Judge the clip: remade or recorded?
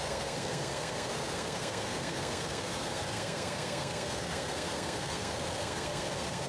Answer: remade